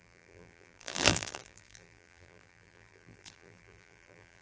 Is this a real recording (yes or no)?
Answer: no